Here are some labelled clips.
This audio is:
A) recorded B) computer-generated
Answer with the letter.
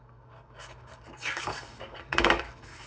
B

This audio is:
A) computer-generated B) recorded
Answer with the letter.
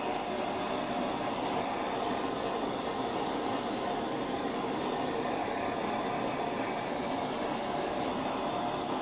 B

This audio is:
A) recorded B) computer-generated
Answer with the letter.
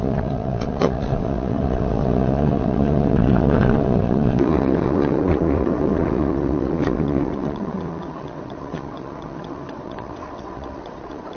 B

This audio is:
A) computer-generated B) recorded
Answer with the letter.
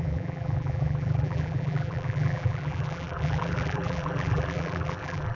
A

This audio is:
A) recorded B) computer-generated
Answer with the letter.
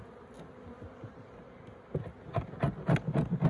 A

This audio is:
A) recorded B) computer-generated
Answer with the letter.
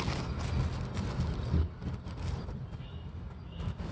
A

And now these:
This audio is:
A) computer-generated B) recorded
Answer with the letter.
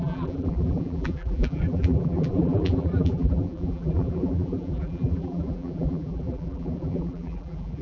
A